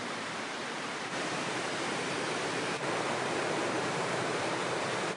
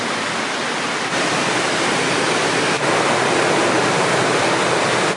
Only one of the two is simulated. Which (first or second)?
first